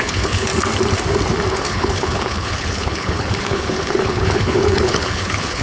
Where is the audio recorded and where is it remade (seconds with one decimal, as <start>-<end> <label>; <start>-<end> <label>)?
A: 0.0-0.5 remade; 0.5-1.5 recorded; 1.5-5.6 remade